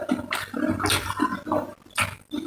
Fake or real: real